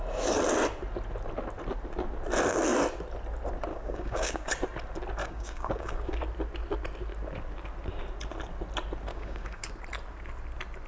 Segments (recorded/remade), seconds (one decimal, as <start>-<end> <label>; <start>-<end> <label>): 0.0-3.7 recorded; 3.7-4.5 remade; 4.5-5.2 recorded; 5.2-6.2 remade; 6.2-9.1 recorded; 9.1-9.7 remade; 9.7-10.9 recorded